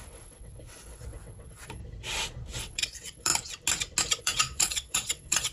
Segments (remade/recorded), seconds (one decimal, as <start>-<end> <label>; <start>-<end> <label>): 0.0-1.8 remade; 1.8-2.6 recorded; 2.6-3.3 remade; 3.3-4.2 recorded; 4.2-5.5 remade